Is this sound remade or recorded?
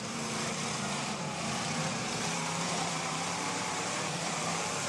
remade